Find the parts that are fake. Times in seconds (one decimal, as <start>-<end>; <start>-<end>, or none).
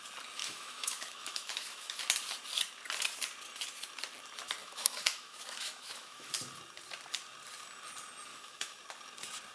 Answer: 0.4-2.0; 4.6-6.3; 8.3-8.8